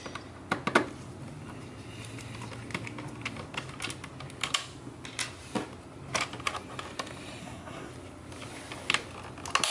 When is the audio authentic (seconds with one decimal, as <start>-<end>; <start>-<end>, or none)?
0.0-7.4; 7.9-9.7